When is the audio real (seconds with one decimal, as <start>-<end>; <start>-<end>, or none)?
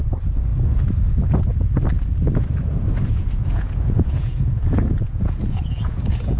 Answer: 0.0-3.0